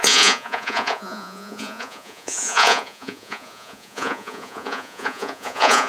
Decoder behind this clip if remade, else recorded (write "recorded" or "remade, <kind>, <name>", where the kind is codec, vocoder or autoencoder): remade, vocoder, Vocos